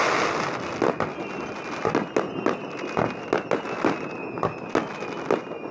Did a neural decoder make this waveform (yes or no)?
no